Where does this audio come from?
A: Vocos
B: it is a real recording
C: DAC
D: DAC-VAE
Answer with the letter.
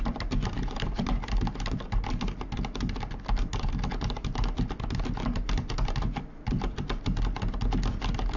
B